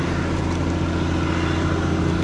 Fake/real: real